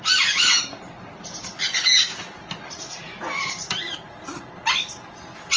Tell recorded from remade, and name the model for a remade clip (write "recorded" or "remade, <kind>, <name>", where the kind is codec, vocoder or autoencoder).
recorded